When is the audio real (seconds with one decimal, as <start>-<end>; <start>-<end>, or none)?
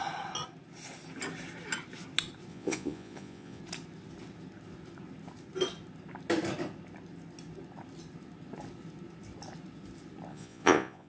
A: 0.0-2.5; 3.6-10.3